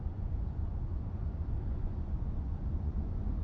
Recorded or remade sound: remade